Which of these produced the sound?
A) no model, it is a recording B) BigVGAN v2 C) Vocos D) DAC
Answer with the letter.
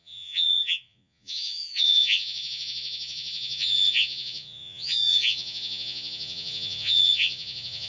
C